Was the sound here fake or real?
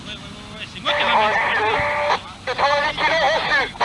real